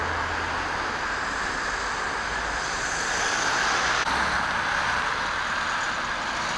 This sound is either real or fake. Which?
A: real